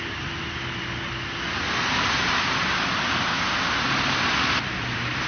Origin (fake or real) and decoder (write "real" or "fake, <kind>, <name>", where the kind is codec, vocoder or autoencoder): real